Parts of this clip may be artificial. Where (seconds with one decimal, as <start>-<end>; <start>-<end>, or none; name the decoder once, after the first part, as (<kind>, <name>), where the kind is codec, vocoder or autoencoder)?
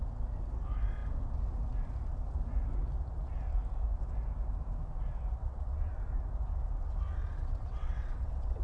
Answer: 5.4-5.9 (vocoder, WaveNeXt); 7.2-8.6